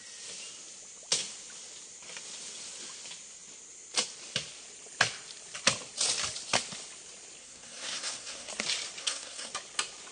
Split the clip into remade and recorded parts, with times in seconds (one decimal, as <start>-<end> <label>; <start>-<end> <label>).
0.0-7.4 recorded; 7.4-8.5 remade; 8.5-9.0 recorded; 9.0-9.5 remade; 9.5-10.1 recorded